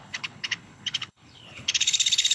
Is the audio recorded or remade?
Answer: remade